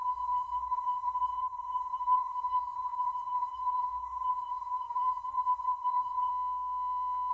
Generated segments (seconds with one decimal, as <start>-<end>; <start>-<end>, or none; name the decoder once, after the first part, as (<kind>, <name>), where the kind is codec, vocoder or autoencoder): 0.0-6.3 (codec, SNAC)